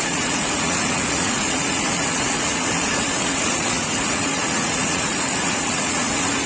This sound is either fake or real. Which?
fake